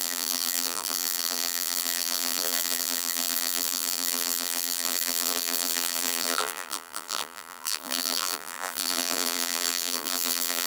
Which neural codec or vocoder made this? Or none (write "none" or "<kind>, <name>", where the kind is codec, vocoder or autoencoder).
vocoder, BigVGAN v2